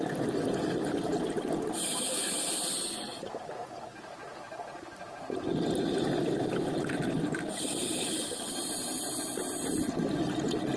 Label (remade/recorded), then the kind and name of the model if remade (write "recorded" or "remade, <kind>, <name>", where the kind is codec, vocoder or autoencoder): recorded